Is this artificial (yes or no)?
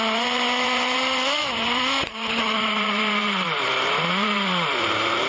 yes